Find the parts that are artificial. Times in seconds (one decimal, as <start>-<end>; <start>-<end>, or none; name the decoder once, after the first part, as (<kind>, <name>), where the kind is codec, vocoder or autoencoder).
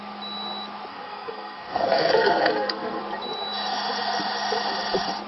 0.9-3.0 (codec, SNAC)